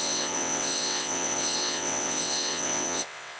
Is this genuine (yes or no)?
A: no